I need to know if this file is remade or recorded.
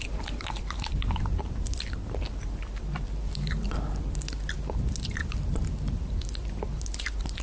remade